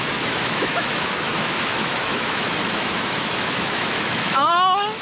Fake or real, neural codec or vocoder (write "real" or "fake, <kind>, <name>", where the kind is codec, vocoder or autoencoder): fake, autoencoder, DAC-VAE